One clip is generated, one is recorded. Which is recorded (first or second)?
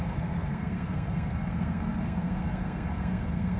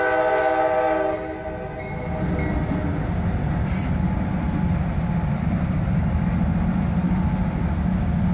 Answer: second